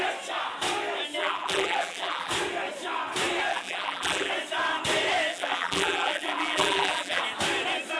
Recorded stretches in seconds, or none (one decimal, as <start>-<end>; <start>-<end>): 0.0-1.2; 2.3-3.5; 4.3-5.3; 7.2-8.0